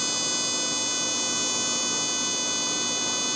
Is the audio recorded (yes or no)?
yes